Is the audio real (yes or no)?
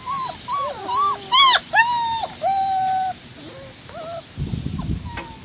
yes